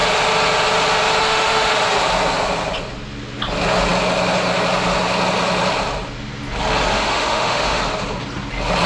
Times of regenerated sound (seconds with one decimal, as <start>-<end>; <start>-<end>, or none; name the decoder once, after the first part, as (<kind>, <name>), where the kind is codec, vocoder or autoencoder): 1.2-1.7 (autoencoder, DAC-VAE); 6.9-7.8